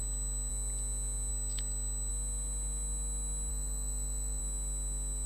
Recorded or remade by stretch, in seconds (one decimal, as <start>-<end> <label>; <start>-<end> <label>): 0.0-3.5 recorded; 3.5-4.4 remade; 4.4-5.3 recorded